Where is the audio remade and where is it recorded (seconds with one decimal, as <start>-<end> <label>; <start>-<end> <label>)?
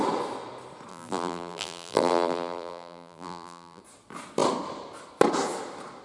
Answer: 0.0-0.9 recorded; 0.9-3.8 remade; 3.8-6.0 recorded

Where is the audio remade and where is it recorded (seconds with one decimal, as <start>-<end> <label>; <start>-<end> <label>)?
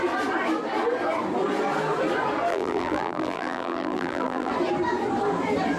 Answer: 0.0-2.5 recorded; 2.5-4.5 remade; 4.5-5.8 recorded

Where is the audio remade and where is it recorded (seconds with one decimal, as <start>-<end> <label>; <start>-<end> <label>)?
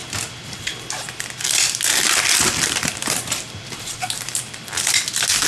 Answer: 0.0-3.0 recorded; 3.0-5.1 remade; 5.1-5.5 recorded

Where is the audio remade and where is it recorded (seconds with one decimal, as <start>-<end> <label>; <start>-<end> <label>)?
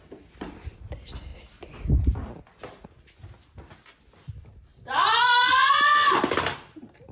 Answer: 0.0-1.3 remade; 1.3-4.3 recorded; 4.3-7.1 remade